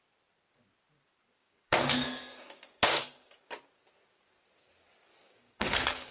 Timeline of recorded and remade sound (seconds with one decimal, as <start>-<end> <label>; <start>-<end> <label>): 0.0-1.4 recorded; 1.4-3.5 remade; 3.5-5.1 recorded; 5.1-6.1 remade